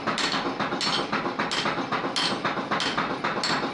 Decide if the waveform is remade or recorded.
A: recorded